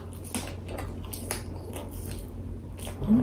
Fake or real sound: real